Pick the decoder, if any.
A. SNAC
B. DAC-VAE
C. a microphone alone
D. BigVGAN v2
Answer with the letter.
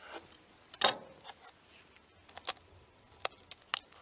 C